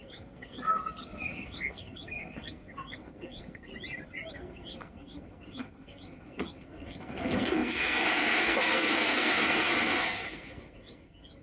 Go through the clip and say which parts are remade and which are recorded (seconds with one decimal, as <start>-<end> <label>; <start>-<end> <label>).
0.0-3.7 remade; 3.7-4.3 recorded; 4.3-11.4 remade